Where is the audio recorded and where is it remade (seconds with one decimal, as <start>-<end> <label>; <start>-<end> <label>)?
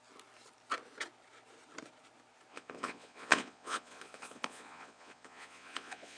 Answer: 0.0-2.5 recorded; 2.5-6.2 remade